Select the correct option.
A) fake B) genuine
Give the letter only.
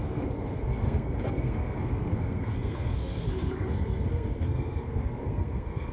A